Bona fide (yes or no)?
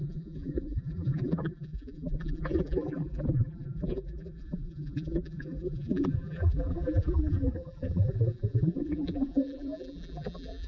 no